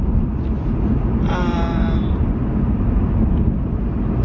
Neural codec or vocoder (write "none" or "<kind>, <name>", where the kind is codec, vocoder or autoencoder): vocoder, BigVGAN v2